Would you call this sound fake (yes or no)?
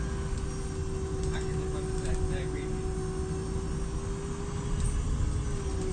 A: no